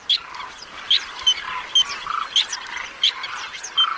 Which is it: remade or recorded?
recorded